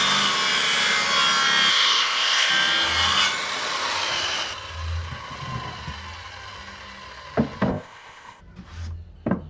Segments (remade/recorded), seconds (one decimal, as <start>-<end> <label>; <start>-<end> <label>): 0.0-1.7 recorded; 1.7-2.5 remade; 2.5-7.7 recorded; 7.7-8.4 remade; 8.4-9.5 recorded